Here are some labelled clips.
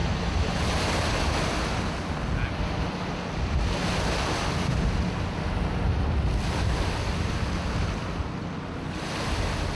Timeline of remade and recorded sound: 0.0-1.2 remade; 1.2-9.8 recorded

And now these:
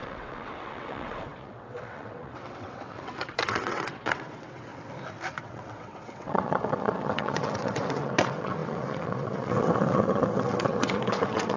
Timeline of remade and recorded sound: 0.0-4.7 remade; 4.7-5.4 recorded; 5.4-11.6 remade

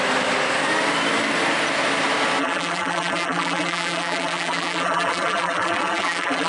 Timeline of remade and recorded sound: 0.0-2.4 recorded; 2.4-6.5 remade

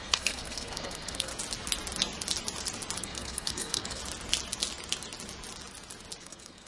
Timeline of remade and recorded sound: 0.0-1.3 remade; 1.3-3.0 recorded; 3.0-4.0 remade; 4.0-6.2 recorded; 6.2-6.7 remade

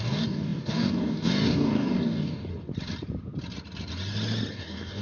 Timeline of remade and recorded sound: 0.0-2.5 remade; 2.5-4.5 recorded; 4.5-5.0 remade

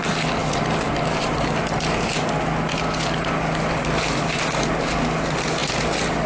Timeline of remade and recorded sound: 0.0-6.3 recorded